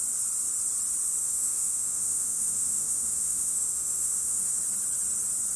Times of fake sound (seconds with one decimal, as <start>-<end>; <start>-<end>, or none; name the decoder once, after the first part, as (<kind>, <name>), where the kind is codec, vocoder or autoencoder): 1.2-4.6 (autoencoder, DAC-VAE)